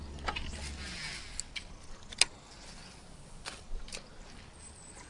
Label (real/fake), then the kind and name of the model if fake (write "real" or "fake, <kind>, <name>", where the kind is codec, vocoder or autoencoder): real